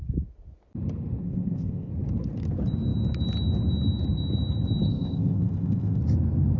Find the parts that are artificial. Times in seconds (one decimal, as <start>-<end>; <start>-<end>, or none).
1.2-1.9; 4.9-6.0